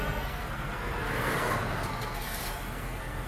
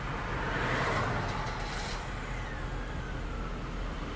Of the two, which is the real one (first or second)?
second